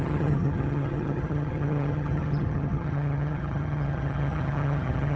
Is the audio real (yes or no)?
no